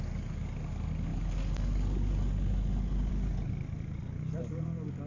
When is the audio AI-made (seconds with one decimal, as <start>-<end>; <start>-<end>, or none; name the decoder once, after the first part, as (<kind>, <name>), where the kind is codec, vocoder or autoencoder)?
none